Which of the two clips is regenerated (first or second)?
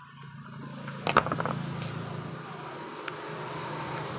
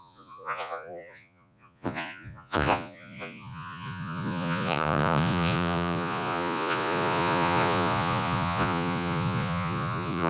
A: second